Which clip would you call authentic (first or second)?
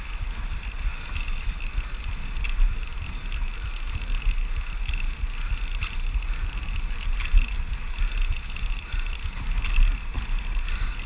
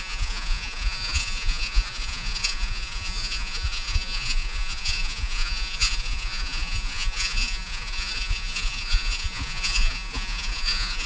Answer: first